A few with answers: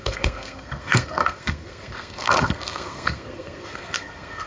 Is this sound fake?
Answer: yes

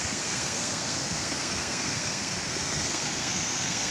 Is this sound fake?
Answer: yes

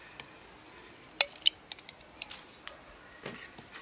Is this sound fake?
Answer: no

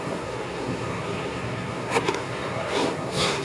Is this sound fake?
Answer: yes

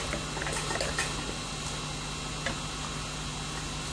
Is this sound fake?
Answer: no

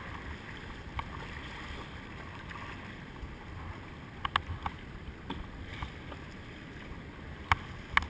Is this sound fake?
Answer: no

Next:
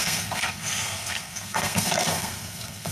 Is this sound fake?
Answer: yes